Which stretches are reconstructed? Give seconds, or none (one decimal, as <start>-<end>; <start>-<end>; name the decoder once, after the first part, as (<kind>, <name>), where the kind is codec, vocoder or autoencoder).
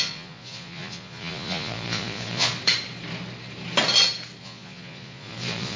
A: 0.0-2.5 (vocoder, Vocos); 4.4-5.8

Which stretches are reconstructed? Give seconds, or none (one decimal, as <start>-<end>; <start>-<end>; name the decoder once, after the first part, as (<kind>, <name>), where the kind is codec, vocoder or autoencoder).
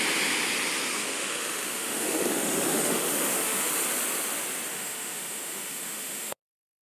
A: 1.0-3.7 (autoencoder, DAC-VAE); 4.7-6.8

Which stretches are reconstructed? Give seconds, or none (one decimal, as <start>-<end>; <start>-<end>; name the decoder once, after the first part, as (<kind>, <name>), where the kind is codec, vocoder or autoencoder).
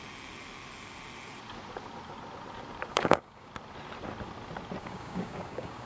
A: 2.9-3.5 (codec, DAC); 4.8-5.9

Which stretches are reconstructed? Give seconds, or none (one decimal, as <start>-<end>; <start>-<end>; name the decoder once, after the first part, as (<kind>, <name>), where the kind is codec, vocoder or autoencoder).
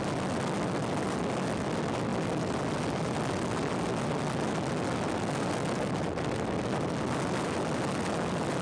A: none